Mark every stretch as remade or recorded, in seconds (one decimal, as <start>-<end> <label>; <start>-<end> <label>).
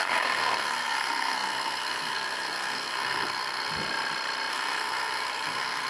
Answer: 0.0-3.7 remade; 3.7-4.5 recorded; 4.5-5.9 remade